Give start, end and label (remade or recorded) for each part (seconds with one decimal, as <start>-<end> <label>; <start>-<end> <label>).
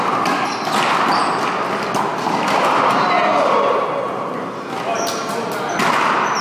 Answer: 0.0-6.4 recorded